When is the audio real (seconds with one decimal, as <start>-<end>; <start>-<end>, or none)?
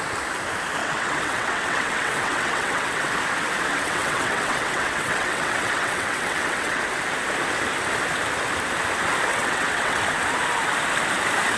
0.0-0.8; 3.1-3.7; 6.8-9.3; 10.0-11.6